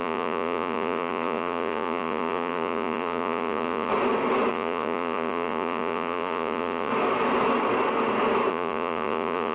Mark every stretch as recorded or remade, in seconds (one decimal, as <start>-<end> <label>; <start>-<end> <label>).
0.0-3.9 remade; 3.9-4.5 recorded; 4.5-6.9 remade; 6.9-8.5 recorded; 8.5-9.5 remade